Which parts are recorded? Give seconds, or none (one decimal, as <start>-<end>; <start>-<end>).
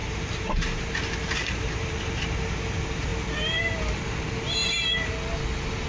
0.9-5.9